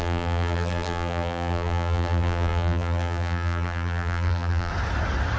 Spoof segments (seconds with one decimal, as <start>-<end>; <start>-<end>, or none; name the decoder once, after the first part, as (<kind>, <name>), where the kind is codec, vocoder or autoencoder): 0.0-4.7 (vocoder, BigVGAN v2)

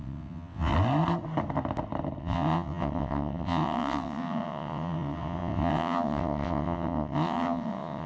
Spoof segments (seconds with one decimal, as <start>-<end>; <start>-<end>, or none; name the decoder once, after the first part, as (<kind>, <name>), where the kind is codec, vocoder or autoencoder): 0.0-0.7 (vocoder, WaveNeXt); 2.2-8.1